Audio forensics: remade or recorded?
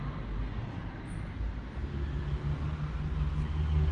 recorded